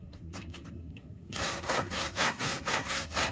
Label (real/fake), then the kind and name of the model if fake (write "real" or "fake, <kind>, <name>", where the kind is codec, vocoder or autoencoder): fake, codec, SNAC